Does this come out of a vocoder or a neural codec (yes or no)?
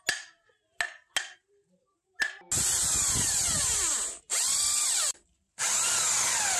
no